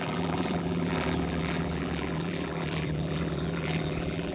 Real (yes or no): no